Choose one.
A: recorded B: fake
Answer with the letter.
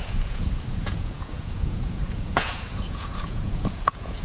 B